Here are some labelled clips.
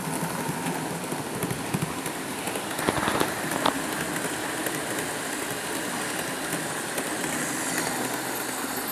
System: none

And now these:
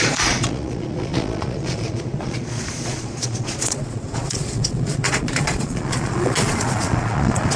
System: vocoder, Vocos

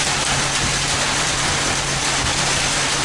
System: none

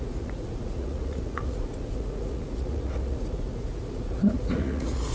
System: vocoder, Vocos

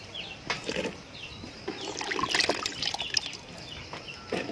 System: none